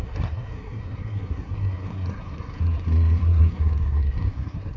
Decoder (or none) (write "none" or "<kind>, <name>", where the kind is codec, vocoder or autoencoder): codec, SNAC